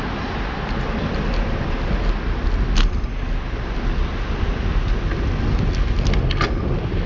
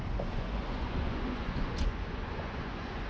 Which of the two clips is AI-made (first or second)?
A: second